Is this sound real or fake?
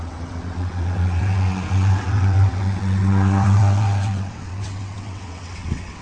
fake